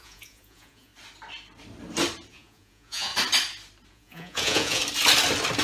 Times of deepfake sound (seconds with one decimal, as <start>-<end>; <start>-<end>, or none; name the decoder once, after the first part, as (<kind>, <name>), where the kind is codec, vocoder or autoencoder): 0.0-0.9 (vocoder, Vocos); 2.3-3.1; 3.9-4.8